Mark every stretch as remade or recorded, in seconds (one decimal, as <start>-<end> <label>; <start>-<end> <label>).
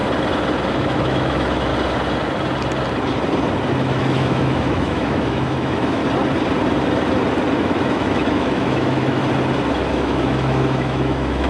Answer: 0.0-0.7 recorded; 0.7-1.7 remade; 1.7-3.7 recorded; 3.7-6.0 remade; 6.0-7.6 recorded; 7.6-9.2 remade; 9.2-9.9 recorded; 9.9-11.5 remade